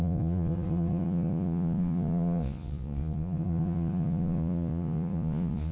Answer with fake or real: fake